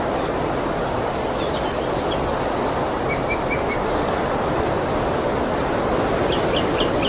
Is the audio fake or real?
real